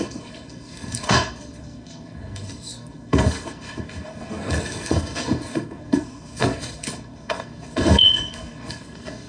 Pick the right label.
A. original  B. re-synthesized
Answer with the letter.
B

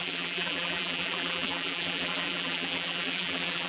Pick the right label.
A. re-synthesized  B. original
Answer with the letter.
A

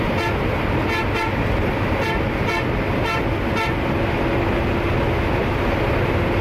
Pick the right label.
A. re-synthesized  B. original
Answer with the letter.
B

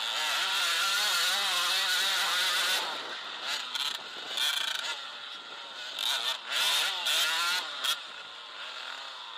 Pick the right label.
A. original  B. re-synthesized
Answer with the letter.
A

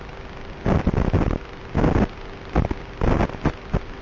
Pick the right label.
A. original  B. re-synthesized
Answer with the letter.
A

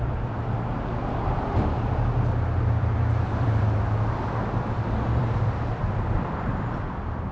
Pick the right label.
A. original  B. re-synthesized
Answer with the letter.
B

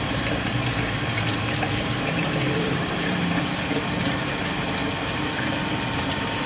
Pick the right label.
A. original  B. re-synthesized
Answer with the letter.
B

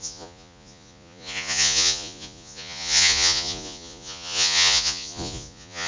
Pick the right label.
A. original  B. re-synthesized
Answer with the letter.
B